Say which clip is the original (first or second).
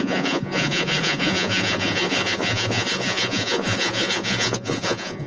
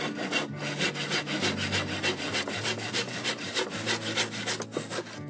second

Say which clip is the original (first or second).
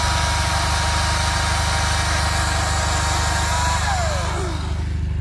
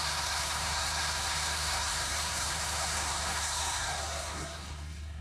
first